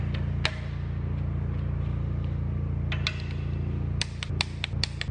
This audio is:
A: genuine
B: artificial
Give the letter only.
A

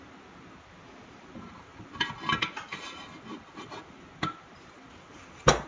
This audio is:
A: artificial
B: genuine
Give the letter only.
B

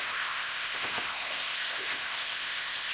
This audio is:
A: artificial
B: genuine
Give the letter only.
A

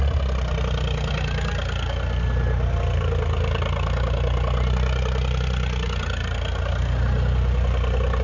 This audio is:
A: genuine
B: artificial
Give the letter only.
A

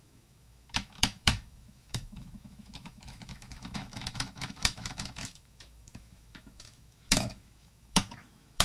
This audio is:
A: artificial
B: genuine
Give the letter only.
A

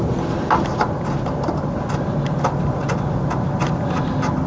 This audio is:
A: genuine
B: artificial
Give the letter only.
A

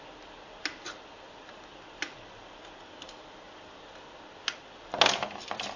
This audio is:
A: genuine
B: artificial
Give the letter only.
A